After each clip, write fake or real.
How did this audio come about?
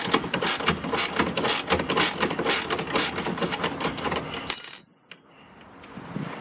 real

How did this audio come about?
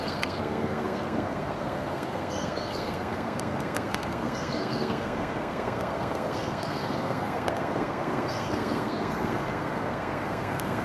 fake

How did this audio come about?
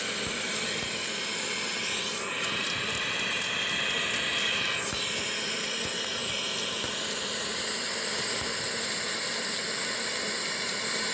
real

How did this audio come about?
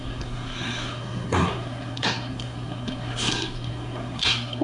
fake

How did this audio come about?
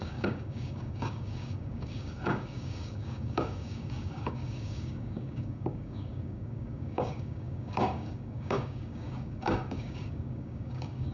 fake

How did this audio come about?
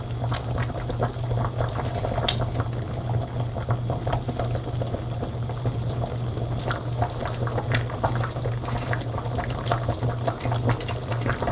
real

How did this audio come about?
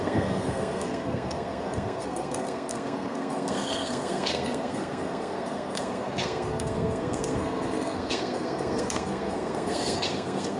fake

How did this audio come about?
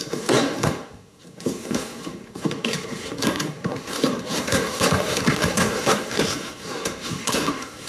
fake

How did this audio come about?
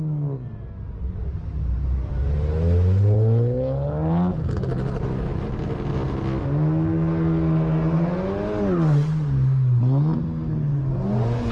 real